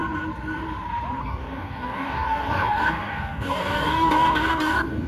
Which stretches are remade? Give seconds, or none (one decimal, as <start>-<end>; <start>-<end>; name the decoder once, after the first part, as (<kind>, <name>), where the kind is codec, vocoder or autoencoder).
1.2-5.1 (codec, DAC)